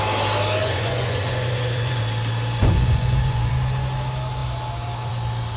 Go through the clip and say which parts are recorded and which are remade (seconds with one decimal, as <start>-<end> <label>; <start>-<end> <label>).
0.0-0.6 recorded; 0.6-2.0 remade; 2.0-2.6 recorded; 2.6-3.5 remade; 3.5-5.6 recorded